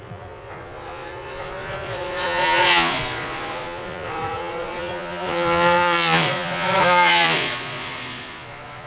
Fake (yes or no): yes